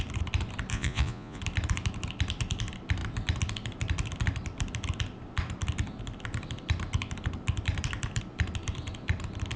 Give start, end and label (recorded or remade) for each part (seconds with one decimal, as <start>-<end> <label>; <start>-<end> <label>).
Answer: 0.0-0.7 recorded; 0.7-1.4 remade; 1.4-9.6 recorded